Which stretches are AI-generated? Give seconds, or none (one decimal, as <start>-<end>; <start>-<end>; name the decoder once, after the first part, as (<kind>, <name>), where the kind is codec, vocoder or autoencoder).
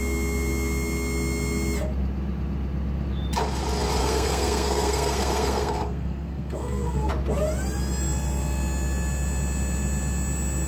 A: 4.0-7.1 (codec, SNAC)